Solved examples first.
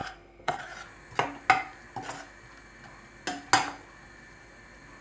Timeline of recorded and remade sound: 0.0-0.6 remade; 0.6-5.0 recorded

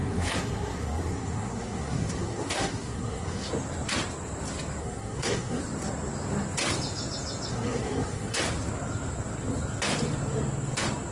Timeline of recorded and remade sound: 0.0-3.5 remade; 3.5-4.8 recorded; 4.8-5.6 remade; 5.6-7.5 recorded; 7.5-8.4 remade; 8.4-11.1 recorded

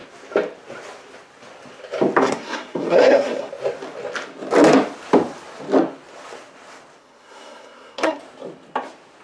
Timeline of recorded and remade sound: 0.0-2.2 recorded; 2.2-3.5 remade; 3.5-7.0 recorded; 7.0-8.2 remade; 8.2-9.2 recorded

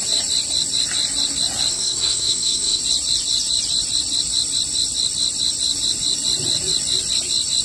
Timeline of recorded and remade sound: 0.0-1.7 recorded; 1.7-2.8 remade; 2.8-7.6 recorded

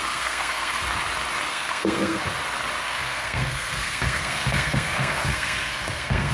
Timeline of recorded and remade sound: 0.0-0.8 remade; 0.8-1.5 recorded; 1.5-2.2 remade; 2.2-2.8 recorded; 2.8-6.3 remade